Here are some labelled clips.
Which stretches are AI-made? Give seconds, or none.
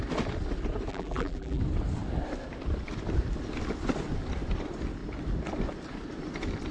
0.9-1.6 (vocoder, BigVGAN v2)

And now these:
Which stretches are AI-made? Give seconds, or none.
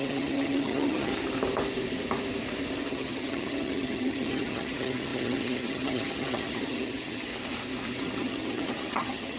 0.0-1.1 (vocoder, HiFi-GAN); 2.9-7.3; 8.0-9.4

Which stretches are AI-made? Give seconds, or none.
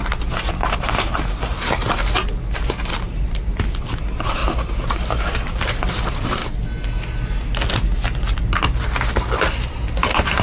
0.0-4.4 (vocoder, BigVGAN v2); 4.9-6.4; 9.3-10.4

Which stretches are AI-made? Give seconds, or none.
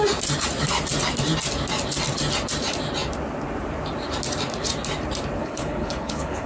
5.4-6.5 (codec, HILCodec)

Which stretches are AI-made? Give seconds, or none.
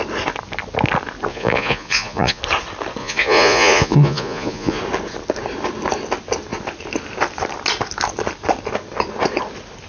1.3-2.4 (vocoder, Vocos); 3.0-4.8